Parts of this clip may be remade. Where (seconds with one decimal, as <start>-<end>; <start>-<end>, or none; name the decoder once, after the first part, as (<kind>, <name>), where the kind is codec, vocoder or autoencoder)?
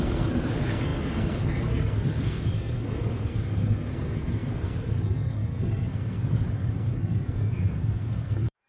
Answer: 0.0-8.7 (codec, SNAC)